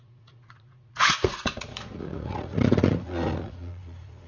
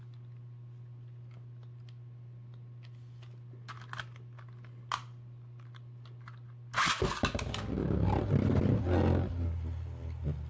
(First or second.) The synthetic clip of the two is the first